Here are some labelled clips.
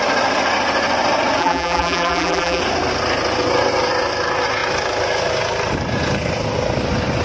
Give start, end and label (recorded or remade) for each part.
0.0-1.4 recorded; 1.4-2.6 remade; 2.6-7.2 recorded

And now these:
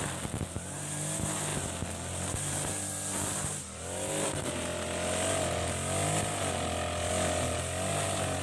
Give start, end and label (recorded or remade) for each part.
0.0-8.4 recorded

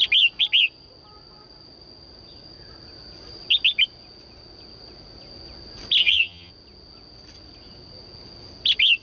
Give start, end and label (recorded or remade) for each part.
0.0-6.0 recorded; 6.0-6.5 remade; 6.5-9.0 recorded

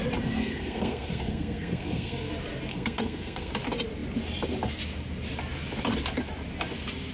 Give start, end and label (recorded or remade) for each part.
0.0-0.4 recorded; 0.4-2.3 remade; 2.3-2.7 recorded; 2.7-3.5 remade; 3.5-7.1 recorded

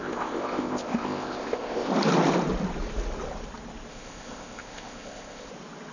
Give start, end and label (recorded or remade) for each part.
0.0-1.9 remade; 1.9-3.9 recorded; 3.9-5.5 remade; 5.5-5.9 recorded

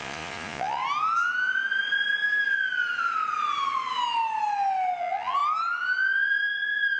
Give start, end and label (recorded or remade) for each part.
0.0-0.8 remade; 0.8-5.0 recorded; 5.0-5.4 remade; 5.4-6.2 recorded; 6.2-7.0 remade

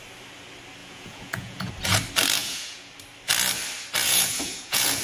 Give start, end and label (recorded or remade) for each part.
0.0-0.8 recorded; 0.8-1.7 remade; 1.7-2.4 recorded; 2.4-2.9 remade; 2.9-4.0 recorded; 4.0-5.0 remade

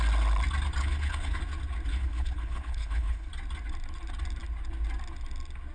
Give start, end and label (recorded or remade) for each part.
0.0-0.8 recorded; 0.8-1.4 remade; 1.4-1.9 recorded; 1.9-3.3 remade; 3.3-5.7 recorded